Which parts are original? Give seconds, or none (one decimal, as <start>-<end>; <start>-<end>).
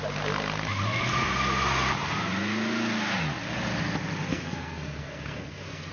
0.0-4.3